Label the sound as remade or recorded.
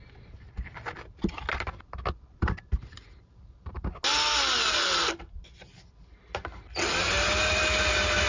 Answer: recorded